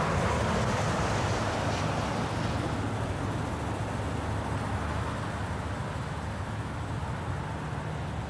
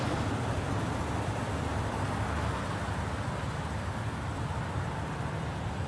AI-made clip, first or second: second